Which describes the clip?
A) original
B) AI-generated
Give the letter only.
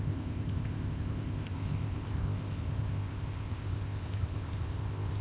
B